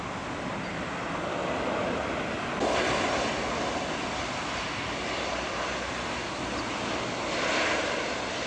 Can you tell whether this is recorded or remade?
recorded